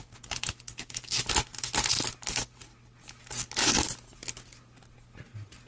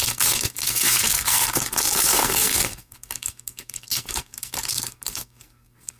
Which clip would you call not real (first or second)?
second